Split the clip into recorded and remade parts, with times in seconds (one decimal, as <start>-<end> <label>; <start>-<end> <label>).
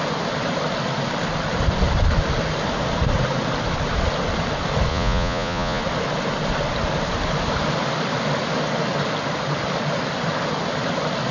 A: 0.0-4.9 recorded; 4.9-5.8 remade; 5.8-11.3 recorded